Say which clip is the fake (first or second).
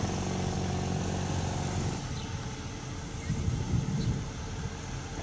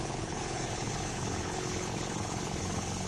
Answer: second